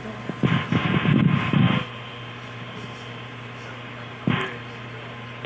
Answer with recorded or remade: recorded